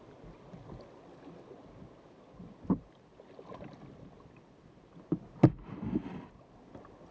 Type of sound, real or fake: real